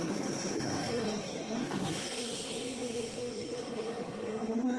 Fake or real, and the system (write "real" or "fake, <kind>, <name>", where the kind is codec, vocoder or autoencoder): fake, codec, SNAC